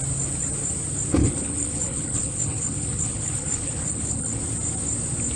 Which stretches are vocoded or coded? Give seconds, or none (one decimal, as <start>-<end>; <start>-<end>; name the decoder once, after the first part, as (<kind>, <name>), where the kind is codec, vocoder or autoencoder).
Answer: 1.2-4.4 (codec, HILCodec)